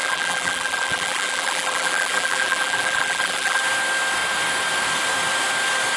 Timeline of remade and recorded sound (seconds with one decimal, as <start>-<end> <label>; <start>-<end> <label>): 0.0-3.6 remade; 3.6-6.0 recorded

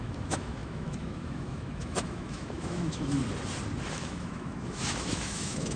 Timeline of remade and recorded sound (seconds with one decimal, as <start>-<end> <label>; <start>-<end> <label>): 0.0-3.2 remade; 3.2-3.9 recorded; 3.9-5.8 remade

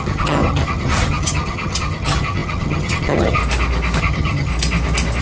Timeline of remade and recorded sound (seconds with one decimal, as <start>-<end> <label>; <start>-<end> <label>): 0.0-3.4 remade; 3.4-4.0 recorded; 4.0-4.5 remade; 4.5-5.2 recorded

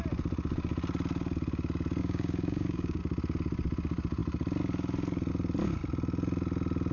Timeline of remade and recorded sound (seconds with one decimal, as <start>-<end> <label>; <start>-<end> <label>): 0.0-2.0 recorded; 2.0-3.0 remade; 3.0-6.9 recorded

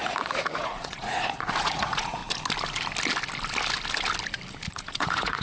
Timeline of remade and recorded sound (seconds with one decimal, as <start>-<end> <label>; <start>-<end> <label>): 0.0-2.2 remade; 2.2-4.7 recorded; 4.7-5.4 remade

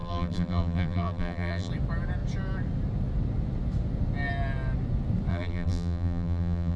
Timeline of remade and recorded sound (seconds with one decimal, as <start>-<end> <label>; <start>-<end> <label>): 0.0-1.7 remade; 1.7-5.3 recorded; 5.3-6.8 remade

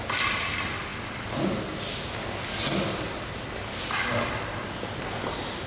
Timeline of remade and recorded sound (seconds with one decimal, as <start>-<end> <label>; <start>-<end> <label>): 0.0-5.7 recorded